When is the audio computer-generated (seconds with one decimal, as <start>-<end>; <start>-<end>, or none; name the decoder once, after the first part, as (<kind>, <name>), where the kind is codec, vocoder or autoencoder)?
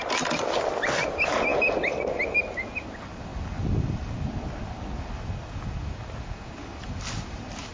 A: none